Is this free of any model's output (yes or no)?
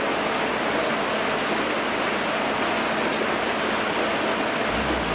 yes